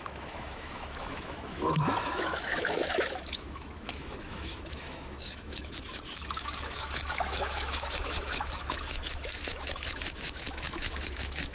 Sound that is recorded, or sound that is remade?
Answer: remade